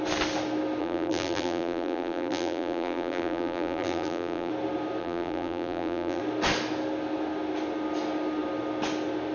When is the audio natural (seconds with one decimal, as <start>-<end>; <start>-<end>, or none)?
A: 0.0-0.8; 4.5-5.0; 6.2-9.3